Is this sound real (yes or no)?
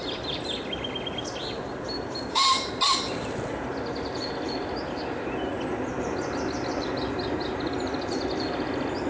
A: yes